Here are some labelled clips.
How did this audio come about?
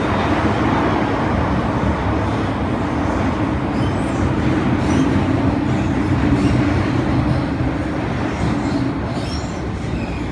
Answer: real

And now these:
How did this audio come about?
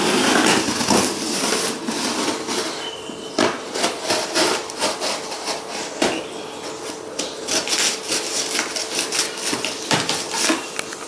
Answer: real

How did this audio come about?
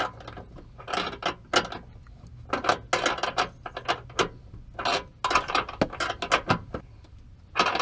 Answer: real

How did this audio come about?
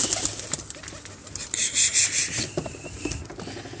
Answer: real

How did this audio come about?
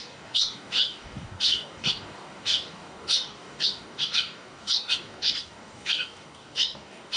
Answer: fake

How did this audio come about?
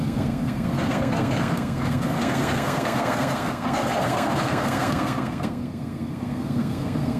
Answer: fake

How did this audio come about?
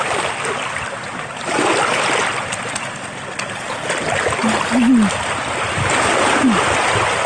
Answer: real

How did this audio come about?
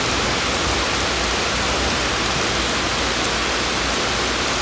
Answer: real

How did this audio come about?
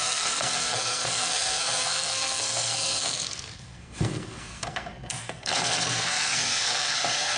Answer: fake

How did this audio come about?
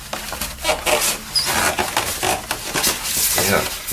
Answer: real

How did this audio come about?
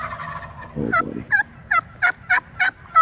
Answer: real